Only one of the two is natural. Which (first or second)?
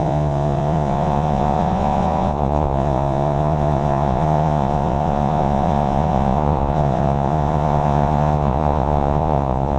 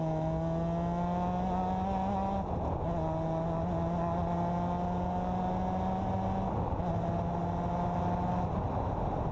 second